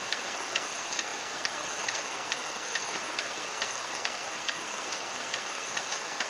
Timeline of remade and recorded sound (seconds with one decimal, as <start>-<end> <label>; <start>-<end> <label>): 0.0-6.3 remade

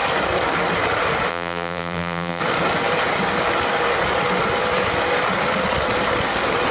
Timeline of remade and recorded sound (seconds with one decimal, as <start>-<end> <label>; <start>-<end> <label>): 0.0-1.3 recorded; 1.3-2.4 remade; 2.4-6.7 recorded

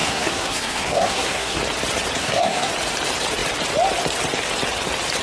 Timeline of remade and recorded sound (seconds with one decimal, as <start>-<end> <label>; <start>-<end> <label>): 0.0-1.6 remade; 1.6-2.2 recorded; 2.2-2.7 remade; 2.7-5.2 recorded

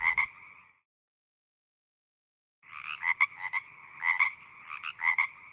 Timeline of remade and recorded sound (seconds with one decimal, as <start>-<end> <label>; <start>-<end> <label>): 0.0-5.5 recorded

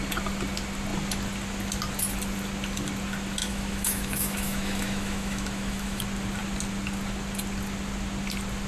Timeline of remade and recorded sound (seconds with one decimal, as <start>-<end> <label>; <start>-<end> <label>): 0.0-3.4 recorded; 3.4-6.0 remade; 6.0-8.7 recorded

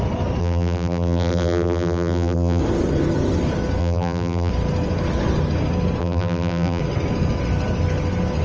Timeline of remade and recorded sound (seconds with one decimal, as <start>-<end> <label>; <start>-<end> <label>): 0.0-0.4 recorded; 0.4-2.6 remade; 2.6-3.8 recorded; 3.8-4.5 remade; 4.5-6.0 recorded; 6.0-6.8 remade; 6.8-8.4 recorded